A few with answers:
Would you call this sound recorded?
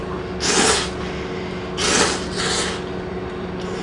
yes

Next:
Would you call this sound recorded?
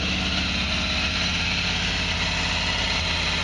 yes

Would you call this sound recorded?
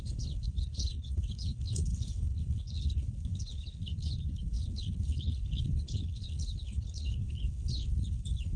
no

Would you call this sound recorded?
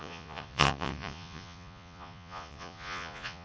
no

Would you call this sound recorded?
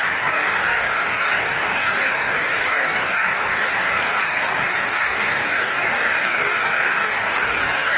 no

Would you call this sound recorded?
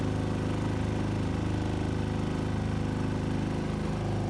yes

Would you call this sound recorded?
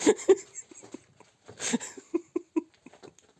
yes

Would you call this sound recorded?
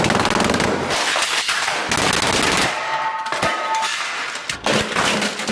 yes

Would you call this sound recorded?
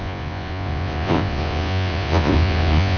no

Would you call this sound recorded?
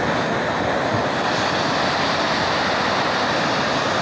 yes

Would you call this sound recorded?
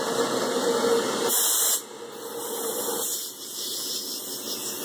yes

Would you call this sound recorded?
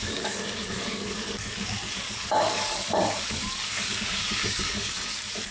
no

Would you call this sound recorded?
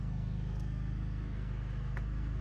no